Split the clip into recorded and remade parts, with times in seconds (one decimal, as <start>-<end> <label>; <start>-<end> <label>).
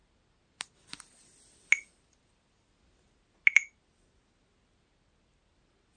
0.0-6.0 recorded